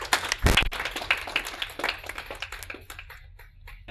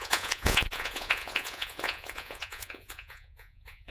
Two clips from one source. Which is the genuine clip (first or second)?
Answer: first